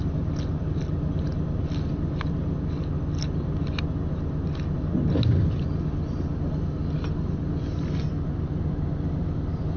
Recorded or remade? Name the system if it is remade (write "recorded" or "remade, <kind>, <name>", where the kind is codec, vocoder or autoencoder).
recorded